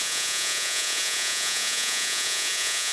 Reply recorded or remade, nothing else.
remade